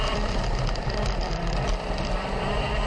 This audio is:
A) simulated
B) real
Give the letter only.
A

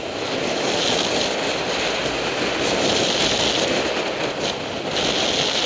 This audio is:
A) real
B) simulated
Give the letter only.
A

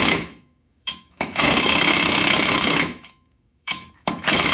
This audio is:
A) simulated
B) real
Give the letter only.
A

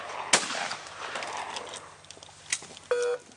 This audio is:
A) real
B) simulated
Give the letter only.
A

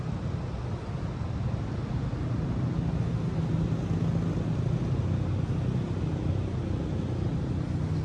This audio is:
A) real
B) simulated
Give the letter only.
A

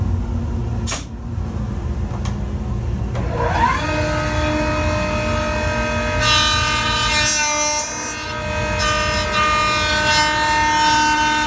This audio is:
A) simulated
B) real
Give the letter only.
B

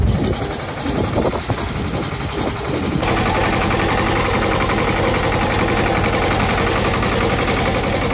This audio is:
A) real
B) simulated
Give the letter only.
A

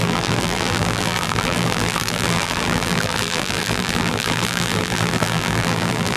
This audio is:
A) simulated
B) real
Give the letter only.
A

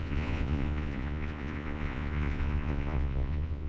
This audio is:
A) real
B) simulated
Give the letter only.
B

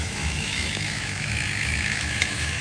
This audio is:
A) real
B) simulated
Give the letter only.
B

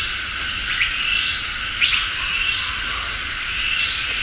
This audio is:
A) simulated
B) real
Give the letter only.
A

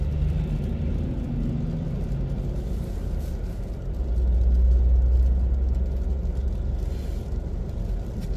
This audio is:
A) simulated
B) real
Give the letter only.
B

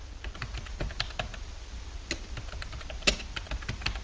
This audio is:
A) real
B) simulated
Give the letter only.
A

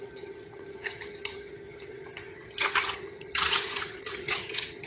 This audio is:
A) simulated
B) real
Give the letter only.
A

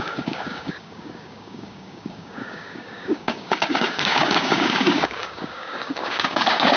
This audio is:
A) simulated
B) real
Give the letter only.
A